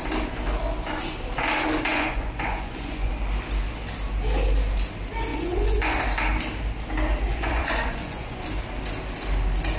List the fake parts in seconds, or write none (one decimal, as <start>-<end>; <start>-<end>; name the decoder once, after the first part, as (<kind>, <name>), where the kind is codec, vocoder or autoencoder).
1.9-3.1 (vocoder, Vocos); 5.3-5.9; 7.3-8.4